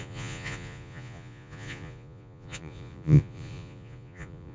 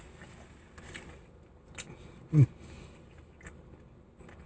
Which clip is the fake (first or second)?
first